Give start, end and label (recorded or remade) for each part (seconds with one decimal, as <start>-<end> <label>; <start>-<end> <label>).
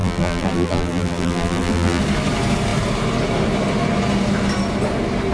0.0-2.0 remade; 2.0-5.3 recorded